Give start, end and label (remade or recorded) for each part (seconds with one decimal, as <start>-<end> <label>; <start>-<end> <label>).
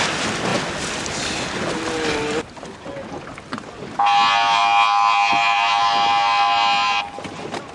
0.0-7.7 recorded